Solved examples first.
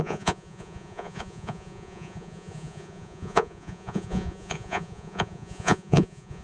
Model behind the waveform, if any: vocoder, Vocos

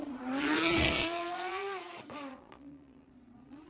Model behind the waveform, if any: vocoder, Vocos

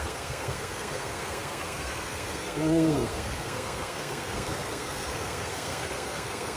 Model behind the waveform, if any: codec, SNAC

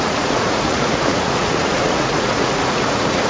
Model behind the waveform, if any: vocoder, Vocos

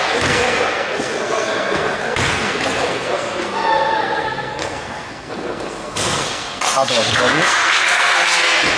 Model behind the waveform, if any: codec, SNAC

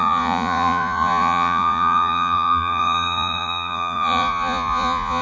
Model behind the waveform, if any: vocoder, Vocos